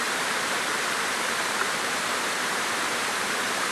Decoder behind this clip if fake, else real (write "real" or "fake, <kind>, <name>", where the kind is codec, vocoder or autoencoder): fake, vocoder, BigVGAN v2